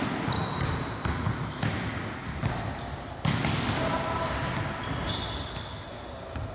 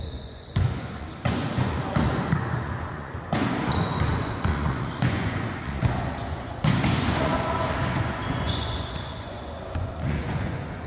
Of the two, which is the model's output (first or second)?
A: second